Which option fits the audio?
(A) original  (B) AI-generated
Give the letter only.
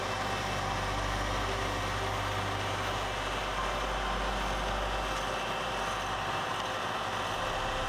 A